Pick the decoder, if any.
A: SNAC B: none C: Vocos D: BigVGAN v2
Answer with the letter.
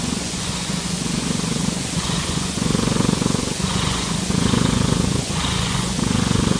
C